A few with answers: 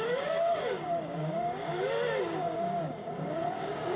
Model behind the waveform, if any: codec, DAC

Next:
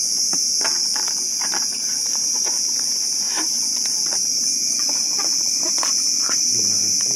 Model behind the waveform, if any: vocoder, BigVGAN v2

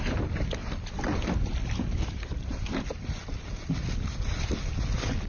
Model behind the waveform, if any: none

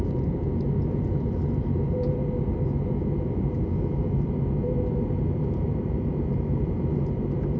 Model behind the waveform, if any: vocoder, BigVGAN v2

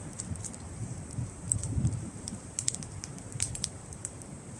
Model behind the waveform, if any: vocoder, BigVGAN v2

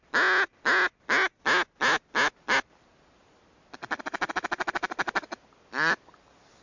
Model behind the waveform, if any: none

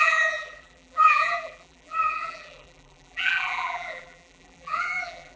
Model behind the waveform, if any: vocoder, BigVGAN v2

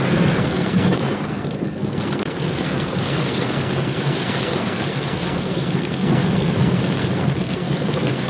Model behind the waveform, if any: codec, SNAC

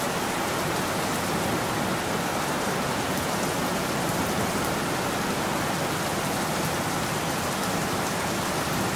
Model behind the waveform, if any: none